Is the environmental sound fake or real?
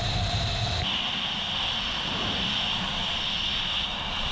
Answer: real